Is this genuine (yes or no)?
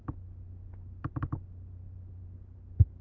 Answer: yes